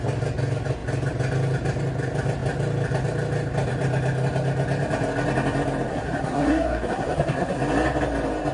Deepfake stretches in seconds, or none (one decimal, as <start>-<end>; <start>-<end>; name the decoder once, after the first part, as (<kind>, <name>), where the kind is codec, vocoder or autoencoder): 5.9-7.6 (codec, SNAC)